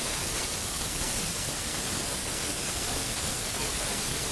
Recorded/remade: remade